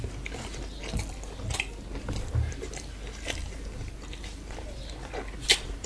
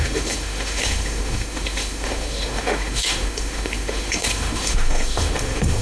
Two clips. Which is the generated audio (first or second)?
second